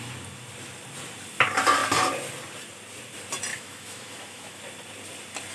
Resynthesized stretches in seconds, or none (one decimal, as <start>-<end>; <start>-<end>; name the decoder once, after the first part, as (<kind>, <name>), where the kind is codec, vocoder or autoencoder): 3.5-4.6 (autoencoder, DAC-VAE)